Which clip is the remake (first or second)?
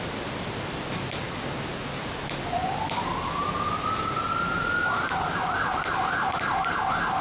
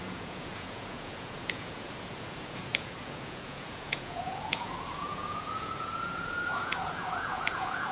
second